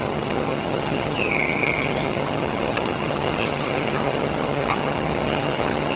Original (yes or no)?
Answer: no